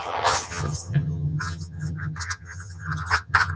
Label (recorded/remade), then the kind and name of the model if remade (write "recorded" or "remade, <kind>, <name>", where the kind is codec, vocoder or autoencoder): remade, vocoder, HiFi-GAN